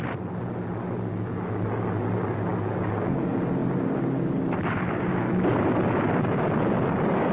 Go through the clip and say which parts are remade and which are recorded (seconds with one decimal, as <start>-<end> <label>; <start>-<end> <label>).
0.0-7.3 recorded